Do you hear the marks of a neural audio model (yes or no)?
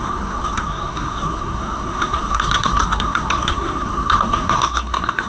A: yes